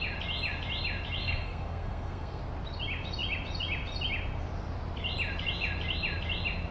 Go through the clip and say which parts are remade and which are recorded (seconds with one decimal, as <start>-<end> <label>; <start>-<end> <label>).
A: 0.0-1.2 recorded; 1.2-2.4 remade; 2.4-6.7 recorded